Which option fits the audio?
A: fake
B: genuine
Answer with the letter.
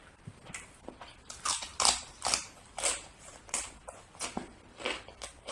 A